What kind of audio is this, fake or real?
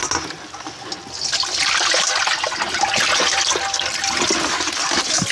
real